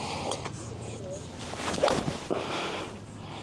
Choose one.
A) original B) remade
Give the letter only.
A